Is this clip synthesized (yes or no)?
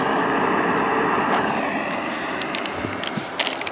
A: no